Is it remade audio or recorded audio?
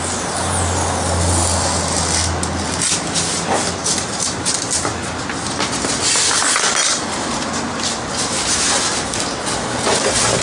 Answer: recorded